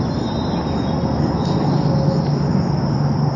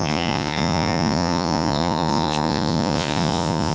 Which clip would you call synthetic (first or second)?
second